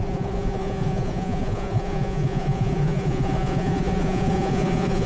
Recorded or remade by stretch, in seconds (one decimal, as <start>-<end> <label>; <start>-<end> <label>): 0.0-5.1 remade